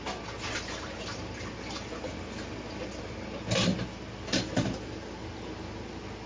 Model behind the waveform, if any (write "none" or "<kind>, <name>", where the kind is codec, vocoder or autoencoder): none